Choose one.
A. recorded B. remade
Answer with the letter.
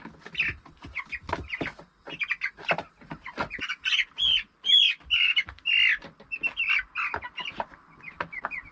A